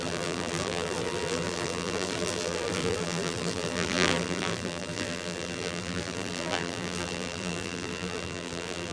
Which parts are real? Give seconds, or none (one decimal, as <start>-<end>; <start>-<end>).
none